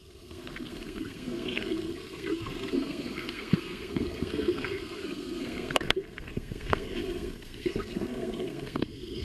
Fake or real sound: fake